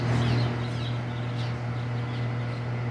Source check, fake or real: real